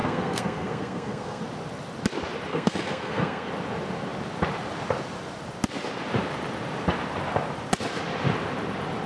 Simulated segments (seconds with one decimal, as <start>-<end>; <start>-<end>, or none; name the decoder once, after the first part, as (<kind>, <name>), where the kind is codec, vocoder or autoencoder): 0.0-1.4 (codec, SNAC); 2.5-3.5